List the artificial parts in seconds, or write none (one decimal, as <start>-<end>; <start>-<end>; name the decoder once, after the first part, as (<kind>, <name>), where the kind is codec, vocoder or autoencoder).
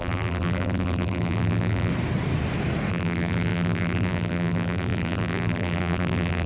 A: 0.0-1.9 (vocoder, BigVGAN v2); 2.9-6.5